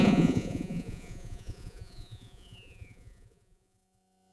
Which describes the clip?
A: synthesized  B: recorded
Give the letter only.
A